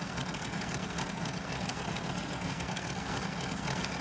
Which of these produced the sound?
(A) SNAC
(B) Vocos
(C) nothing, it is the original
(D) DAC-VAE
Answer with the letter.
A